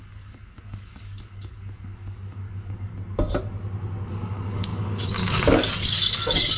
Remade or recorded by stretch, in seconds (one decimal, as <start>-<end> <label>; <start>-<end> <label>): 0.0-2.9 remade; 2.9-4.1 recorded; 4.1-6.6 remade